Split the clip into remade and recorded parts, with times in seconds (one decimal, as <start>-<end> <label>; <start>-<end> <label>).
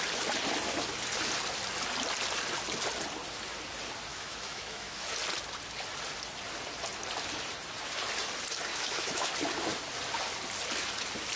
0.0-4.1 recorded; 4.1-5.1 remade; 5.1-8.7 recorded; 8.7-9.3 remade; 9.3-11.4 recorded